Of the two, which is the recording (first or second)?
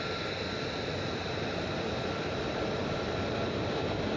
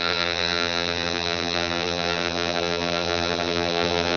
first